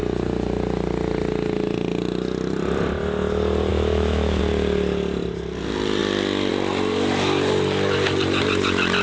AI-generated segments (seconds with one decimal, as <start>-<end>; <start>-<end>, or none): 3.7-4.4